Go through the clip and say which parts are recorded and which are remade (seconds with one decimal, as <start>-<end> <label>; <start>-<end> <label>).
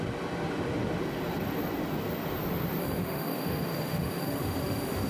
0.0-2.8 recorded; 2.8-5.1 remade